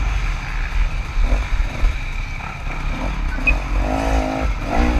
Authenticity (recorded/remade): recorded